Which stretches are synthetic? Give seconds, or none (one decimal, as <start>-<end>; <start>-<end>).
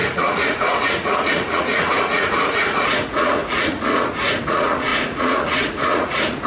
0.0-6.5